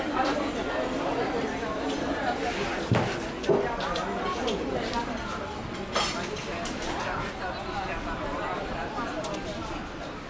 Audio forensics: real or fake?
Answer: real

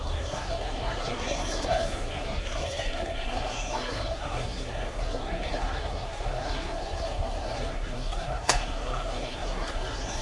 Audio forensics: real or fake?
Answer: fake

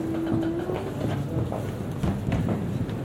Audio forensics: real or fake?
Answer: real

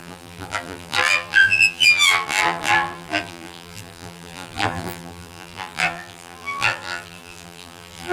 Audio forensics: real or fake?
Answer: fake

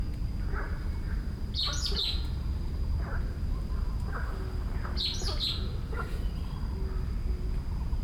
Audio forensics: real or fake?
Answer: real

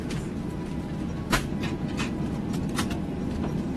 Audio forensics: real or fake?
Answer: real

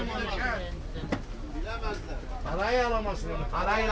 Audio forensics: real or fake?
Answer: real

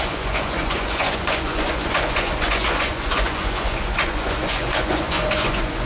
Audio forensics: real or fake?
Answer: fake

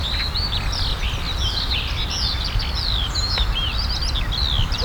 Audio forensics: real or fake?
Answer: real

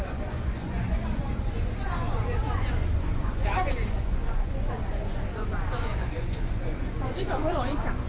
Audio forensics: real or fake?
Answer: fake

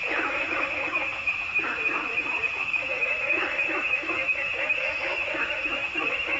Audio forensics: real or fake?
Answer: fake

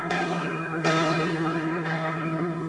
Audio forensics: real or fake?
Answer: fake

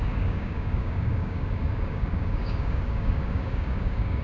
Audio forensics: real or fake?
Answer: fake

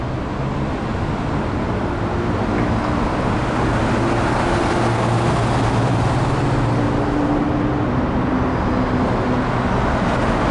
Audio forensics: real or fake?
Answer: real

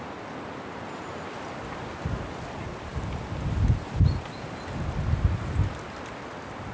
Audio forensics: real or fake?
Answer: real